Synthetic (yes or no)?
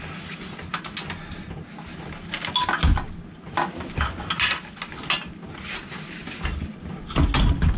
no